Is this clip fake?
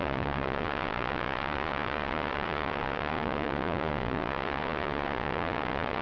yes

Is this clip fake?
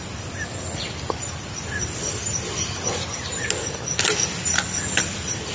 no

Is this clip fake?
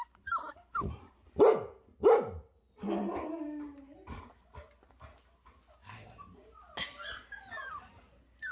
no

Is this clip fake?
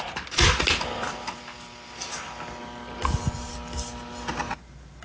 no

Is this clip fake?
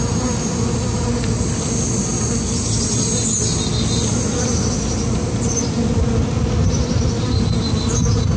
no